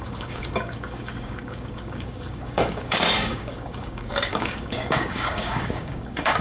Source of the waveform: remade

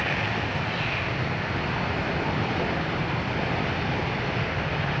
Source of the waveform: recorded